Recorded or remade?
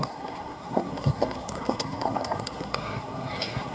remade